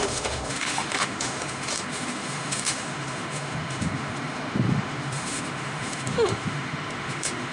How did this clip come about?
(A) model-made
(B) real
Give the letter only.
A